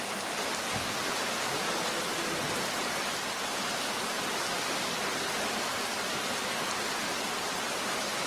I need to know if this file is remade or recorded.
recorded